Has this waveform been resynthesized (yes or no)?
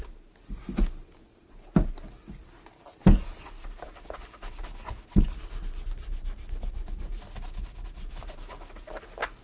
no